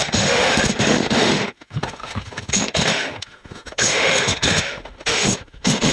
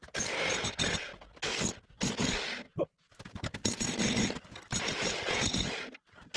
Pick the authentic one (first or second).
second